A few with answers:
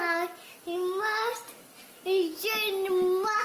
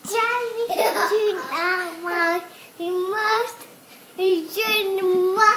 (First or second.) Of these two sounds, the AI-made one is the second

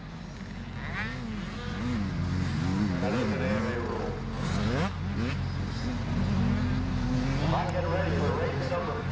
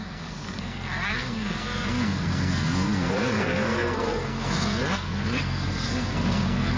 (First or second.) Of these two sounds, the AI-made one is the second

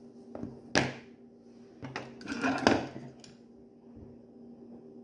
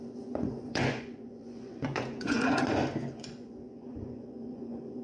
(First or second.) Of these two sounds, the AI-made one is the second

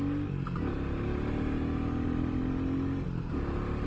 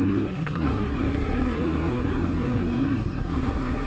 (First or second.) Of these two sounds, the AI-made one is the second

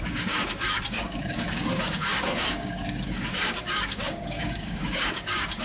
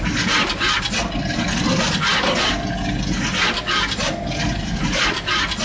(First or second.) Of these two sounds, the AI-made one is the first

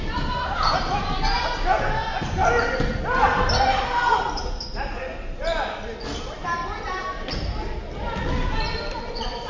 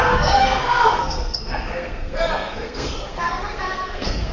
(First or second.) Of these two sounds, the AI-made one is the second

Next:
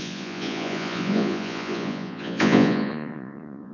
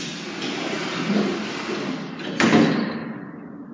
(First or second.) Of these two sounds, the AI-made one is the first